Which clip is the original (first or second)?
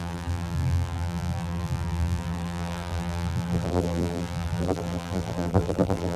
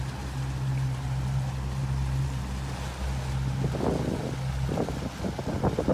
second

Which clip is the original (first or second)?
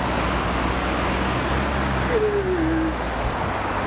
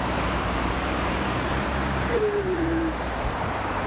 first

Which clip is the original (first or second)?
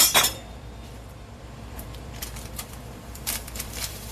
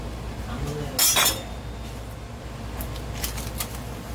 second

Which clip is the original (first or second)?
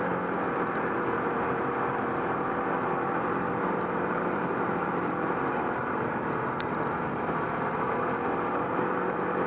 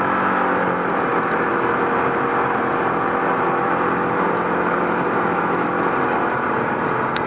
second